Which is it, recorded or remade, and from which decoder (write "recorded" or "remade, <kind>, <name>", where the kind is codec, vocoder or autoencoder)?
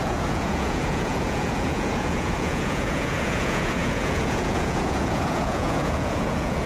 remade, vocoder, Vocos